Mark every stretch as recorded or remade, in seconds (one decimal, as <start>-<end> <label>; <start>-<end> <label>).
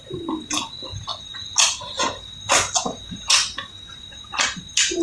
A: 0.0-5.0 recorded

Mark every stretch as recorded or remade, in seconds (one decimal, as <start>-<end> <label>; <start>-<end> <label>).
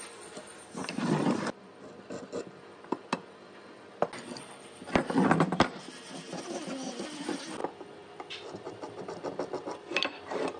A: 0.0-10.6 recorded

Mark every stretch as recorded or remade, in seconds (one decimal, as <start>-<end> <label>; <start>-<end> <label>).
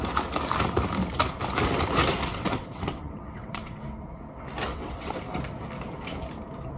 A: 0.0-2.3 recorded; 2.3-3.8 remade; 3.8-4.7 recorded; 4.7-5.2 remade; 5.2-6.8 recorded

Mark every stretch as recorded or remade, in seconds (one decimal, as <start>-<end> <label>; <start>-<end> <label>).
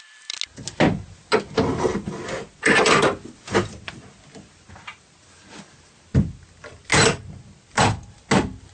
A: 0.0-8.7 recorded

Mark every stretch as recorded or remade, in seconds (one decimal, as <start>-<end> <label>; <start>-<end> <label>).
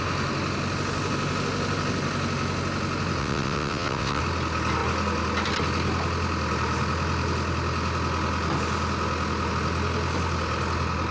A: 0.0-3.2 recorded; 3.2-4.2 remade; 4.2-11.1 recorded